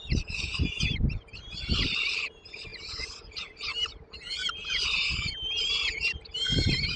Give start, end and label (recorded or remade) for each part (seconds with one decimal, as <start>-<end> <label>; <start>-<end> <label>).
0.0-2.7 remade; 2.7-3.2 recorded; 3.2-3.7 remade; 3.7-5.1 recorded; 5.1-7.0 remade